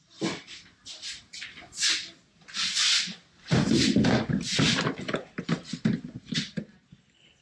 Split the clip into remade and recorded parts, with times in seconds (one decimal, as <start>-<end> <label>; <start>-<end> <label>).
0.0-7.4 recorded